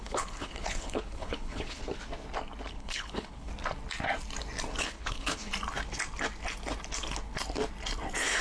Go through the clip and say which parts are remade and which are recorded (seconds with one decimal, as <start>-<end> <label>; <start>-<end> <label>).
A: 0.0-1.8 remade; 1.8-2.7 recorded; 2.7-3.5 remade; 3.5-4.8 recorded; 4.8-5.5 remade; 5.5-8.4 recorded